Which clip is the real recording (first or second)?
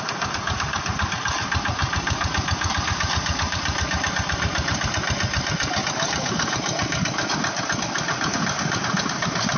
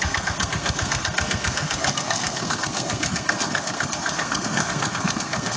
first